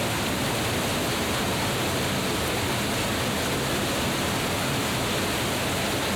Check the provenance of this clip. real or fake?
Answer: real